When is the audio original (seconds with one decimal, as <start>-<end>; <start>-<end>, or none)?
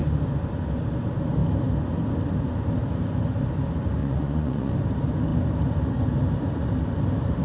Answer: 0.0-4.0; 4.7-7.4